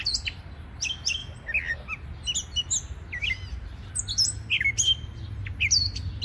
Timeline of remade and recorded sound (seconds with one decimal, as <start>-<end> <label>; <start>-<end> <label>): 0.0-6.2 recorded